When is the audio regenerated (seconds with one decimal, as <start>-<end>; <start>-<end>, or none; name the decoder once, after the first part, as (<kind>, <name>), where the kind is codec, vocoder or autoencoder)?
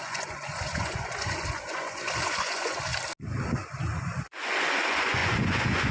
0.0-2.9 (vocoder, Vocos); 4.0-5.9